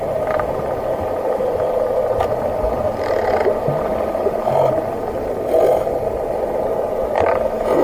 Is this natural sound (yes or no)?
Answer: yes